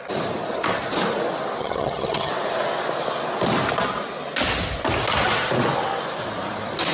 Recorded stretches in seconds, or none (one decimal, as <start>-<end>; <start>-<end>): 0.0-1.6; 2.3-6.9